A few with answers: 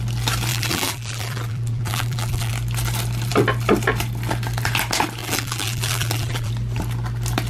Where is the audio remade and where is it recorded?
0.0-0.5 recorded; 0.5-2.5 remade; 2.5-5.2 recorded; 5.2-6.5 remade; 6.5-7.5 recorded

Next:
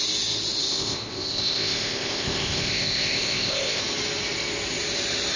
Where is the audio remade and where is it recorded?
0.0-0.6 recorded; 0.6-3.8 remade; 3.8-5.4 recorded

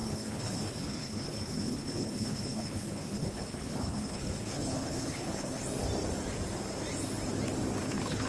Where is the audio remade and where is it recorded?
0.0-5.6 remade; 5.6-7.8 recorded; 7.8-8.3 remade

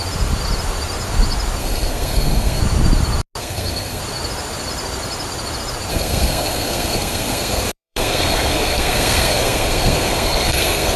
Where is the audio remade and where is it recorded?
0.0-1.6 recorded; 1.6-2.6 remade; 2.6-3.4 recorded; 3.4-4.0 remade; 4.0-5.9 recorded; 5.9-11.0 remade

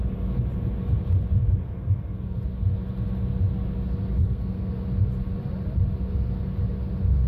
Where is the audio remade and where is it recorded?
0.0-1.6 recorded; 1.6-2.4 remade; 2.4-4.2 recorded; 4.2-4.7 remade; 4.7-7.3 recorded